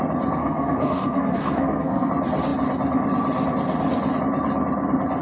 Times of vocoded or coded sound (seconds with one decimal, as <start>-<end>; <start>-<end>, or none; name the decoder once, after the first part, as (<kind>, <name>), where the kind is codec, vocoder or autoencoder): 0.4-2.1 (codec, SNAC)